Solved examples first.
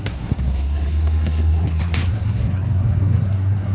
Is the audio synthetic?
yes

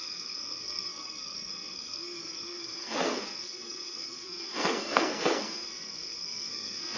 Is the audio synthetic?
yes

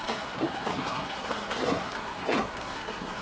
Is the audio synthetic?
yes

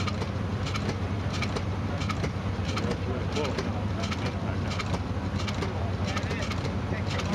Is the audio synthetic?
no